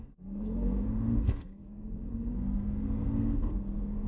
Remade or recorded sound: remade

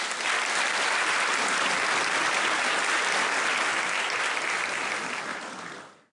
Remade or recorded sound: recorded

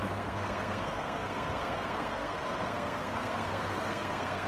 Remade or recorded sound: remade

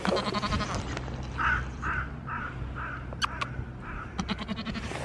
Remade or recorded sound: recorded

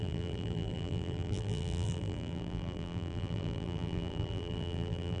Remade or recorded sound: remade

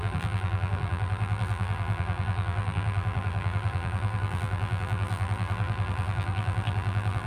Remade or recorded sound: remade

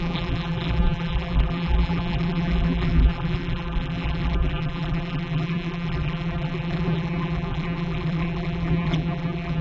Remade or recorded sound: remade